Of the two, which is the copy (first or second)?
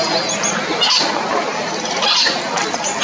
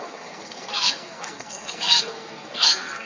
second